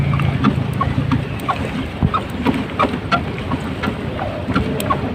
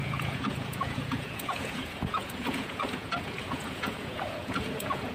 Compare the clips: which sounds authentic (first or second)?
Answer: first